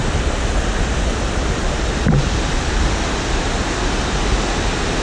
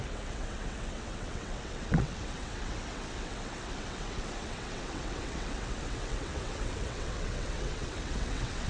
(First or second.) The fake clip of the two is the second